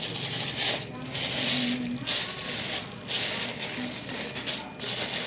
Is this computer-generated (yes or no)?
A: no